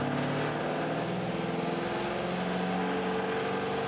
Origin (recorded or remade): recorded